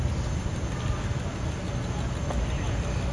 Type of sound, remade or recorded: recorded